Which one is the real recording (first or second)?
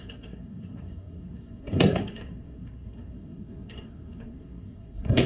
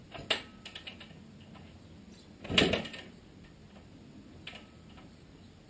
second